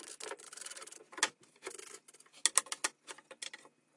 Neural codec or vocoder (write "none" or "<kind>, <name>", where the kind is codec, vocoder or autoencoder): none